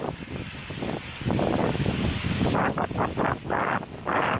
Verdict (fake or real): fake